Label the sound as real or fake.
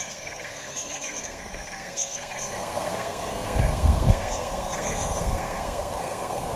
fake